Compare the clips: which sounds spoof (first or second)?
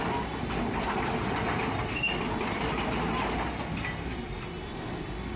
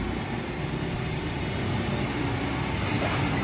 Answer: second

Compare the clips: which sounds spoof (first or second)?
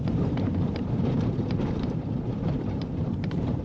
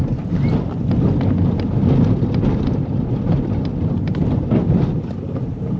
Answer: first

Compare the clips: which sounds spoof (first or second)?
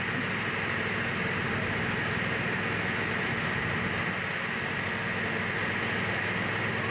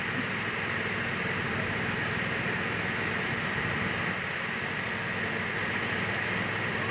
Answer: second